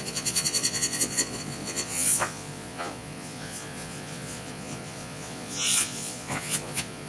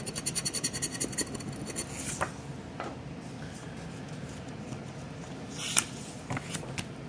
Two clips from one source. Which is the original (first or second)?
second